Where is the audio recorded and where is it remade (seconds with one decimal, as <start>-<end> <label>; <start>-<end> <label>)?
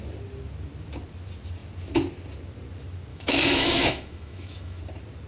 0.0-3.1 recorded; 3.1-4.8 remade; 4.8-5.3 recorded